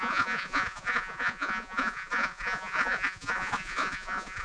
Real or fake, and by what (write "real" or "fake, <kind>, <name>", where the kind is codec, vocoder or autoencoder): fake, vocoder, Vocos